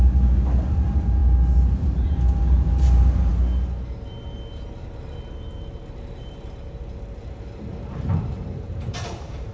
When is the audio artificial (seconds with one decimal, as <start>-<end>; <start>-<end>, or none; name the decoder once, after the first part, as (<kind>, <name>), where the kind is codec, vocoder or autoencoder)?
7.2-9.5 (vocoder, BigVGAN v2)